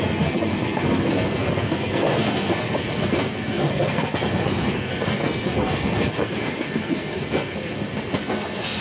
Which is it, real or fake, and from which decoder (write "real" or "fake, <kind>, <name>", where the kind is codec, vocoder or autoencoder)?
fake, codec, SNAC